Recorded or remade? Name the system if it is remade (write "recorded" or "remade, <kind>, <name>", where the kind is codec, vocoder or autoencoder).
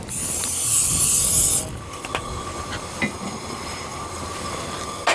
recorded